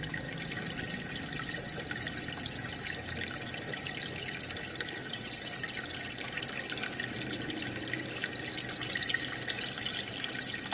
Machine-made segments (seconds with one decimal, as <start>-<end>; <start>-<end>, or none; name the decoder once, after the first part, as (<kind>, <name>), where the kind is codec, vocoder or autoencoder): 5.0-5.5 (vocoder, WaveNeXt)

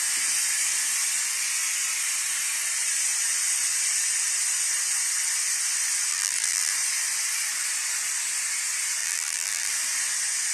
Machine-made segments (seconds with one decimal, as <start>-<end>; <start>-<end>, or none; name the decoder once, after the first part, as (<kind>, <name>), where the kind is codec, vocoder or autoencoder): 6.1-6.7 (vocoder, BigVGAN v2); 9.0-9.7